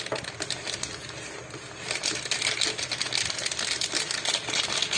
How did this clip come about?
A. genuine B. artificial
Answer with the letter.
A